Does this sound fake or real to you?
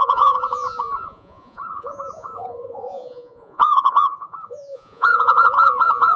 fake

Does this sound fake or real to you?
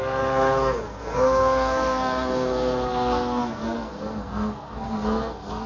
fake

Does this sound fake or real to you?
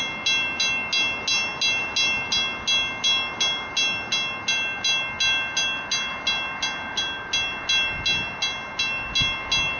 real